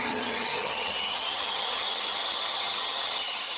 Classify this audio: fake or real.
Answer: fake